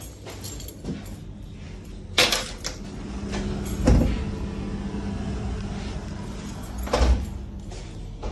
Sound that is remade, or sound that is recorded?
recorded